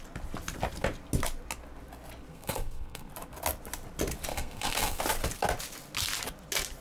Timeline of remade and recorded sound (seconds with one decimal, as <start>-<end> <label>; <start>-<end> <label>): 0.0-2.3 recorded; 2.3-3.1 remade; 3.1-4.3 recorded; 4.3-5.0 remade; 5.0-6.8 recorded